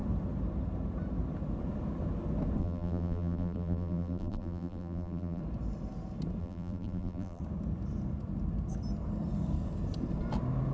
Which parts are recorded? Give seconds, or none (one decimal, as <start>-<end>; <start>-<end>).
0.0-2.6; 5.4-6.4; 7.4-10.7